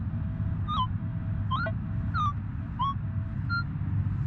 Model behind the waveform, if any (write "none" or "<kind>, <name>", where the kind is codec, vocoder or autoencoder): none